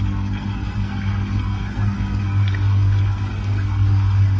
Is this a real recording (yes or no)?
no